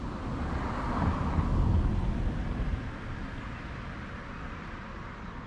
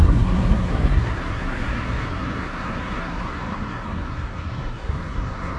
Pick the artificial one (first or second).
second